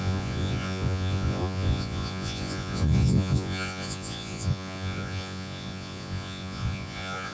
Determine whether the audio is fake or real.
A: fake